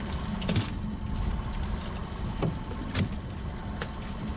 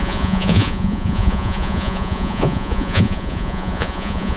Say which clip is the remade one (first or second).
second